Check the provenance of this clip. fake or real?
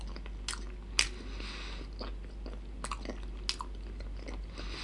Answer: real